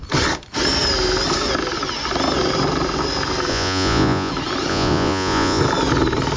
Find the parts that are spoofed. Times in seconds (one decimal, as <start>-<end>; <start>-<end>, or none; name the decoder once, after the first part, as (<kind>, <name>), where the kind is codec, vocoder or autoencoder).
3.5-4.3 (vocoder, Vocos); 4.7-5.6